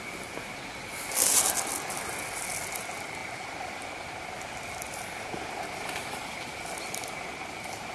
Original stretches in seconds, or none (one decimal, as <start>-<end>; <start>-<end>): 0.0-7.9